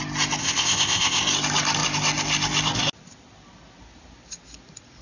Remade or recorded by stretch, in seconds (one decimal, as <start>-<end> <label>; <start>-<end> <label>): 0.0-0.4 recorded; 0.4-1.2 remade; 1.2-5.0 recorded